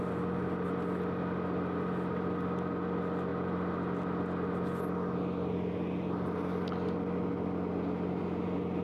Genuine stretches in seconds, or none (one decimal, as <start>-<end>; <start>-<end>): 0.0-8.8